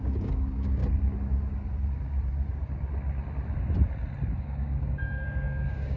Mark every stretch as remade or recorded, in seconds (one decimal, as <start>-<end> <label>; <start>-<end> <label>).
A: 0.0-0.8 remade; 0.8-4.4 recorded; 4.4-6.0 remade